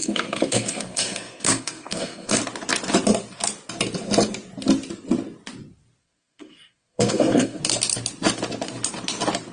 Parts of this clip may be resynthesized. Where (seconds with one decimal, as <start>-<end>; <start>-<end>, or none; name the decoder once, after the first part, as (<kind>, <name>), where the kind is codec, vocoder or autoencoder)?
0.0-2.4 (codec, SNAC); 6.0-7.6